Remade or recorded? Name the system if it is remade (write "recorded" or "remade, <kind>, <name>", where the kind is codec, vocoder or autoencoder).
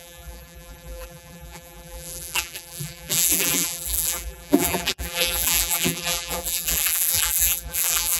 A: remade, vocoder, BigVGAN v2